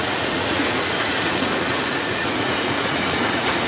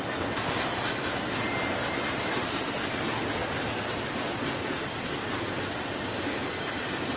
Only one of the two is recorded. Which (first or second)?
second